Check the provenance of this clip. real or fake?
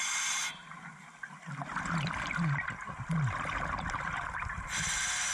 real